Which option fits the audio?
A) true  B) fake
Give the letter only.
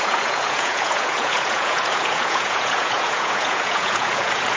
B